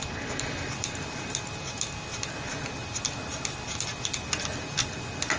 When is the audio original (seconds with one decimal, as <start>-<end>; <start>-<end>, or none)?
0.0-5.4